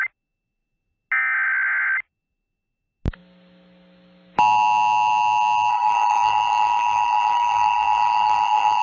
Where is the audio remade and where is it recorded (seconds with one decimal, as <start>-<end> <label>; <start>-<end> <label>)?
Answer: 0.0-5.7 recorded; 5.7-8.8 remade